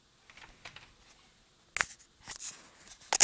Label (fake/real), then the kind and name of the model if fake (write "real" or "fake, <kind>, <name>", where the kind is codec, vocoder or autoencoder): real